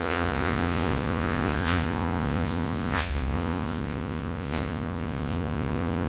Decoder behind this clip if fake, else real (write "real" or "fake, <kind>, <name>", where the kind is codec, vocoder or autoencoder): fake, vocoder, Vocos